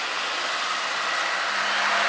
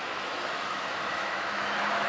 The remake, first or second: second